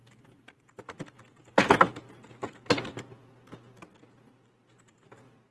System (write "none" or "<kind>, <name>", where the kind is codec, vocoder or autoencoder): none